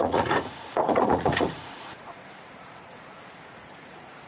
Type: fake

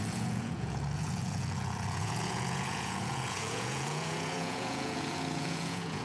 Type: fake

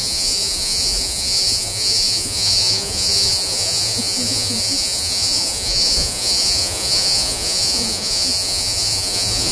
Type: fake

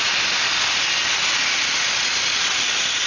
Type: real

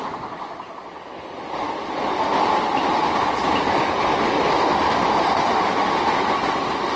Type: real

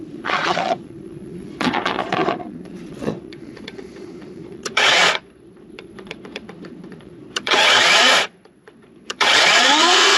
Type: fake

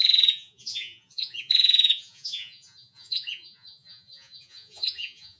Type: fake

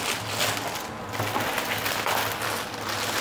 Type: real